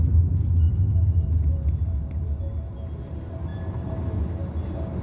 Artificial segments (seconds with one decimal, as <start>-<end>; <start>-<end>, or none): none